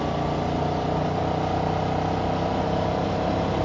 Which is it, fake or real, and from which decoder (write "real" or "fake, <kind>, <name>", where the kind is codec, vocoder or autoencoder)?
real